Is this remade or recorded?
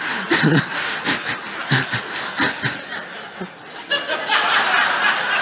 recorded